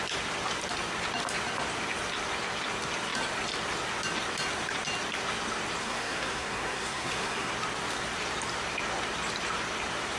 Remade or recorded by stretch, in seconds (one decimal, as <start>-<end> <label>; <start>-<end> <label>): 0.0-5.8 recorded; 5.8-7.5 remade; 7.5-10.2 recorded